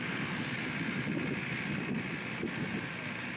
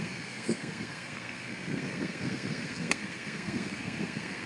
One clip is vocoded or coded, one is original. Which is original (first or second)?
first